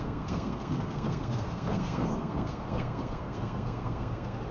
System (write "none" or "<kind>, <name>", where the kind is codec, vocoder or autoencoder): codec, SNAC